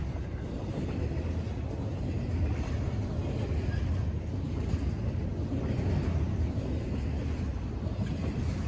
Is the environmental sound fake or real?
real